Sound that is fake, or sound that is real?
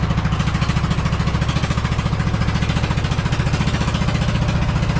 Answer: real